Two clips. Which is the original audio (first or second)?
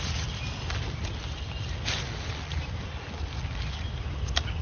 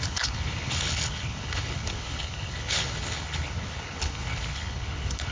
first